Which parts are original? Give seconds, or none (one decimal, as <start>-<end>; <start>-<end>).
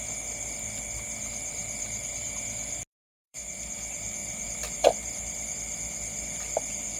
0.0-2.9; 3.5-7.0